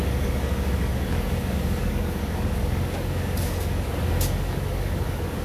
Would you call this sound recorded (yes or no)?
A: no